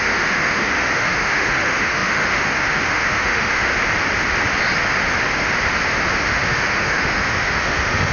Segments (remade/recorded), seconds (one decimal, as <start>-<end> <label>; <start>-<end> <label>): 0.0-3.7 remade; 3.7-6.2 recorded; 6.2-8.1 remade